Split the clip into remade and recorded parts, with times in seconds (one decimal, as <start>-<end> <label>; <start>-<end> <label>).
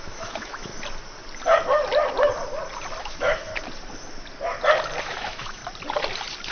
0.0-0.7 remade; 0.7-3.0 recorded; 3.0-3.5 remade; 3.5-5.0 recorded; 5.0-5.6 remade; 5.6-6.5 recorded